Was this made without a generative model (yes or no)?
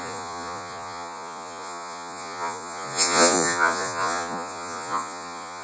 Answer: no